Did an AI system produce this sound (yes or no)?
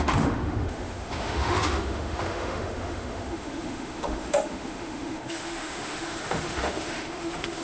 yes